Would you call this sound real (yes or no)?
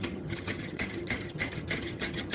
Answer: no